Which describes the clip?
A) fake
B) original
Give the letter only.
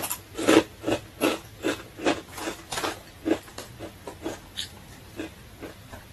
B